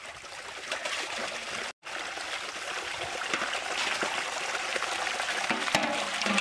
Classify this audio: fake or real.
real